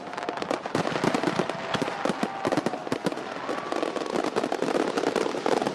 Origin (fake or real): real